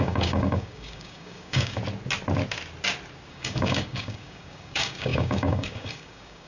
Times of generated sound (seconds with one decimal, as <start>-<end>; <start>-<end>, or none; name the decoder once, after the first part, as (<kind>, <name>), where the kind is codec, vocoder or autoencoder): 0.0-1.8 (codec, DAC); 3.3-6.5